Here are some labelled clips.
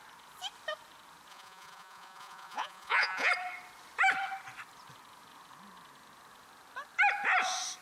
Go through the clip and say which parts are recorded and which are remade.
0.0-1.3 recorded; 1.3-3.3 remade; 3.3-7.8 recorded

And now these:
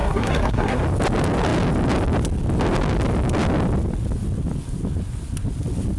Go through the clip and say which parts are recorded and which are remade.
0.0-0.8 remade; 0.8-6.0 recorded

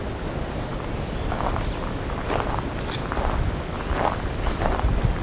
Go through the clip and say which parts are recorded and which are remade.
0.0-5.2 recorded

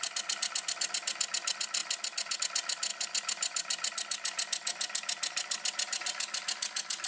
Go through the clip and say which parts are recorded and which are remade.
0.0-7.1 recorded

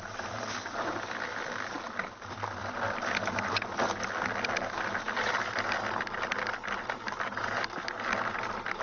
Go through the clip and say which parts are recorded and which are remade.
0.0-8.8 recorded

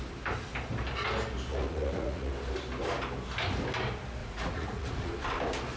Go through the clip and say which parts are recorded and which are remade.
0.0-1.5 recorded; 1.5-2.3 remade; 2.3-4.2 recorded; 4.2-5.1 remade; 5.1-5.8 recorded

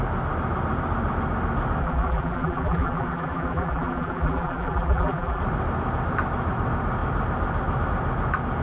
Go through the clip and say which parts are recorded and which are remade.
0.0-1.8 recorded; 1.8-5.4 remade; 5.4-8.6 recorded